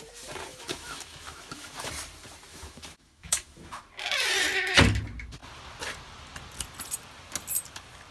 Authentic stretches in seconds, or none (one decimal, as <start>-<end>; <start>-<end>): 0.0-0.5; 1.9-2.5; 3.8-8.1